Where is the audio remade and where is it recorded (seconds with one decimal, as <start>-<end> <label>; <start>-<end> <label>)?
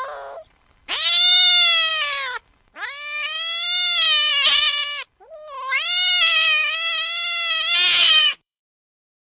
0.0-8.0 recorded; 8.0-8.6 remade; 8.6-9.4 recorded